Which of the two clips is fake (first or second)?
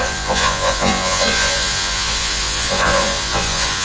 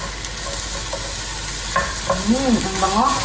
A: first